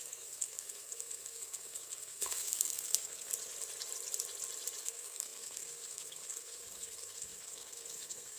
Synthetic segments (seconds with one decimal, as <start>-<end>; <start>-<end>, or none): 0.0-3.3; 4.8-8.4